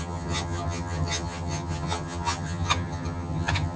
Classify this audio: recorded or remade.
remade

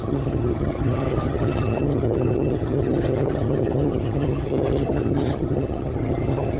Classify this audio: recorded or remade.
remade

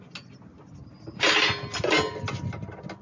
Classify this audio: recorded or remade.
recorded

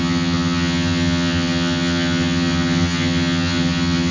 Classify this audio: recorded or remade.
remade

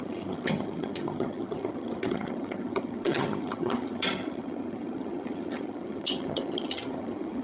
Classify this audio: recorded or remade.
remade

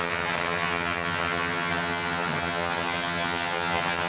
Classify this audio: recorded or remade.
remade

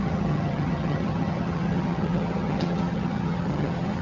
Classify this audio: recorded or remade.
remade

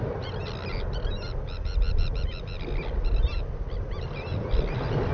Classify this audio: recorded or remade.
recorded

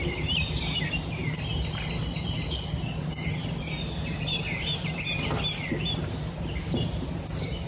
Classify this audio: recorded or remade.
recorded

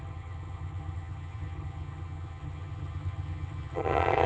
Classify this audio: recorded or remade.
remade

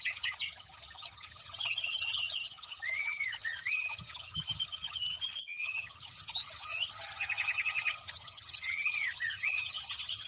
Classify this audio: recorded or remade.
remade